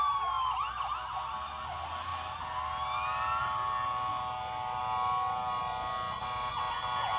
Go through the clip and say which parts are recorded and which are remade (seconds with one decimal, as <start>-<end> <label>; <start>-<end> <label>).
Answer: 0.0-7.2 recorded